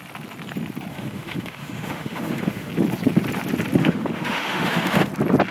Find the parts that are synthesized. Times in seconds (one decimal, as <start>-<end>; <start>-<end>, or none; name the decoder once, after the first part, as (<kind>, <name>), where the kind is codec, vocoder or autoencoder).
0.9-2.7 (autoencoder, DAC-VAE); 3.8-5.1